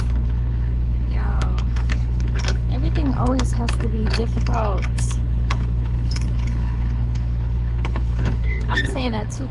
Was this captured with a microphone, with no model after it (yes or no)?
no